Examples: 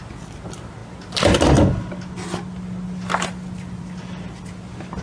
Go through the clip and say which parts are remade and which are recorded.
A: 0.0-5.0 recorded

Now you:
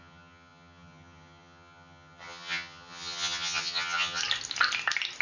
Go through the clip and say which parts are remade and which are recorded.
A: 0.0-4.2 remade; 4.2-5.2 recorded

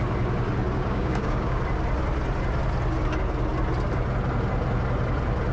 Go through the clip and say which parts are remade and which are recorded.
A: 0.0-0.8 recorded; 0.8-1.6 remade; 1.6-5.5 recorded

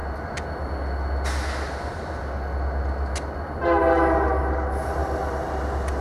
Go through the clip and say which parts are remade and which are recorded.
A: 0.0-6.0 recorded

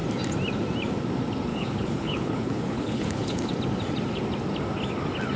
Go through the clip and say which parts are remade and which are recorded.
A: 0.0-1.5 recorded; 1.5-3.5 remade; 3.5-5.4 recorded

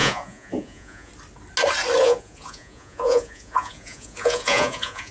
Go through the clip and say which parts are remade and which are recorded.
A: 0.0-1.1 remade; 1.1-2.0 recorded; 2.0-5.1 remade

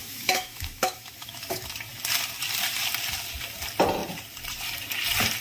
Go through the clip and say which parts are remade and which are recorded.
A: 0.0-1.7 remade; 1.7-5.4 recorded

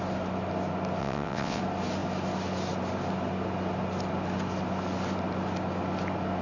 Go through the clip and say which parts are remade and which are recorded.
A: 0.0-1.0 recorded; 1.0-1.6 remade; 1.6-6.4 recorded